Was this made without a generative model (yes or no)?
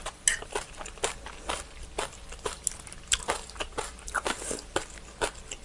yes